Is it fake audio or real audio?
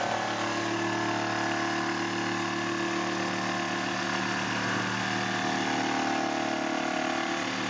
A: real